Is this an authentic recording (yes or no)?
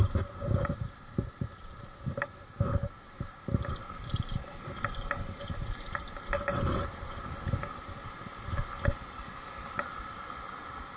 yes